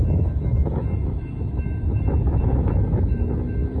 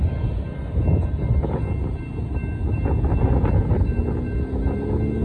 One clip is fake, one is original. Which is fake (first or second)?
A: first